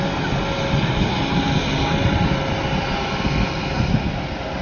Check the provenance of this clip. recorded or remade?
recorded